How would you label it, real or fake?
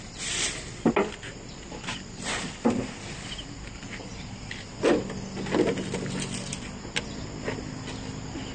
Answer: real